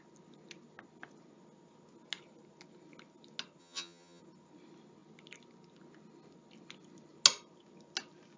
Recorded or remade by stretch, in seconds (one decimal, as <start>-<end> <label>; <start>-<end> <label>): 0.0-3.6 recorded; 3.6-4.2 remade; 4.2-8.4 recorded